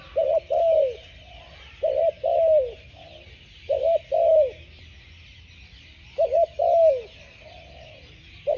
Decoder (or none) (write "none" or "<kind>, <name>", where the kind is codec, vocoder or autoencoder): none